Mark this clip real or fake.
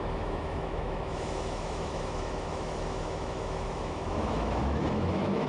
fake